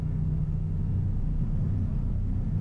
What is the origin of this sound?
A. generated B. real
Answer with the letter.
A